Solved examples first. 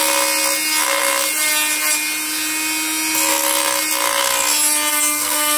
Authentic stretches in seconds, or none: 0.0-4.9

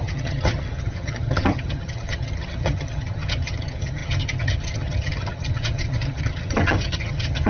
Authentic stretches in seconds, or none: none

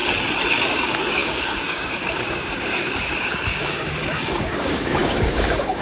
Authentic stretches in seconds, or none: 0.0-0.7

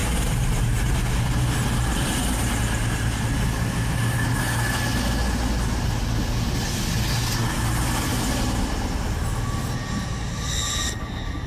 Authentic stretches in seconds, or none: 2.6-11.5

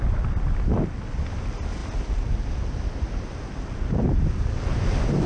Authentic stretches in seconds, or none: 0.0-5.3

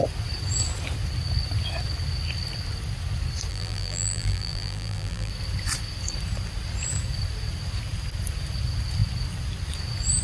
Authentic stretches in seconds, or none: 0.0-3.5; 5.3-10.2